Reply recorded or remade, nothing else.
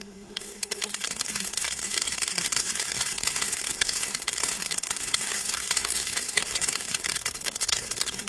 remade